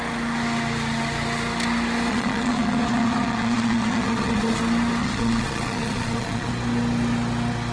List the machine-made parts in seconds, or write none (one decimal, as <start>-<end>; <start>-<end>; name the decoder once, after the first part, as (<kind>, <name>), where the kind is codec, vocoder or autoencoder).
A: 2.1-4.6 (vocoder, Vocos); 5.0-6.5

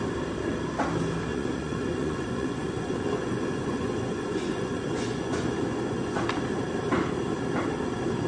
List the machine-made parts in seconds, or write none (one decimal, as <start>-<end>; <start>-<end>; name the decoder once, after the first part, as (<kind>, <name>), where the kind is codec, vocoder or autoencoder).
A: 1.3-6.2 (vocoder, Vocos)

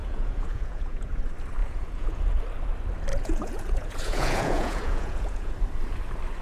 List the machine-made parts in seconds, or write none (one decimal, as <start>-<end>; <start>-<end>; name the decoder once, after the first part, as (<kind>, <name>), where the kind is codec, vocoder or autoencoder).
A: 0.0-1.2 (vocoder, Vocos); 1.6-2.2; 3.1-5.5

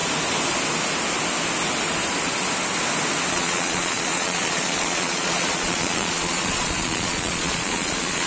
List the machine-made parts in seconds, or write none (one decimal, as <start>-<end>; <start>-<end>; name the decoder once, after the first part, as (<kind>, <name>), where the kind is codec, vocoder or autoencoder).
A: 3.3-8.3 (vocoder, Vocos)